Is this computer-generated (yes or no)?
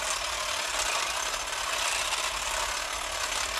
no